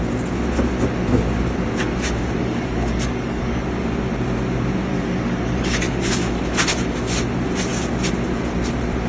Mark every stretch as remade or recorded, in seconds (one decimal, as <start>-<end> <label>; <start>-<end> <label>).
0.0-2.4 recorded; 2.4-3.6 remade; 3.6-4.9 recorded; 4.9-6.3 remade; 6.3-9.1 recorded